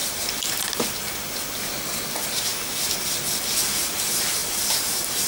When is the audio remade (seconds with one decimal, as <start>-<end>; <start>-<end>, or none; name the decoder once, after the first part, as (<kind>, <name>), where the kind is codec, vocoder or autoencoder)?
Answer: none